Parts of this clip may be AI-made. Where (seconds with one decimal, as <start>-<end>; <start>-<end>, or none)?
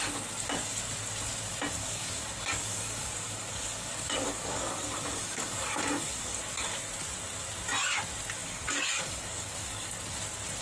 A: 1.8-6.4; 8.4-9.9